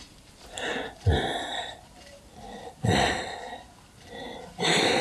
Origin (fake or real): real